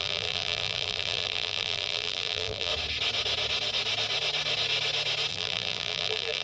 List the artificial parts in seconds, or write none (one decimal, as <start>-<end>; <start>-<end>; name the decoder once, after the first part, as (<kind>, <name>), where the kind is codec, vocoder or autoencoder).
0.0-2.7 (vocoder, BigVGAN v2); 5.3-6.4